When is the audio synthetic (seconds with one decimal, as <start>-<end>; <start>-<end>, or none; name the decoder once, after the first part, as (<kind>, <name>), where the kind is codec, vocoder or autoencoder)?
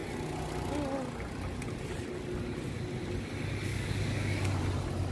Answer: 3.7-4.6 (codec, DAC)